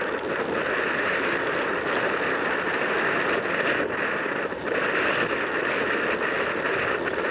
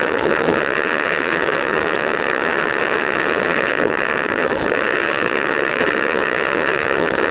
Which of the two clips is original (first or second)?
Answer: first